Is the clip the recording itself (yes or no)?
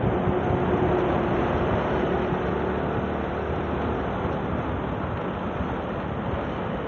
yes